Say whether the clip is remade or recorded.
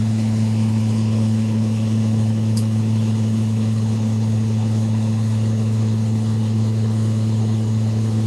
remade